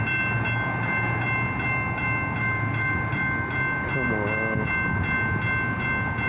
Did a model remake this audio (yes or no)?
no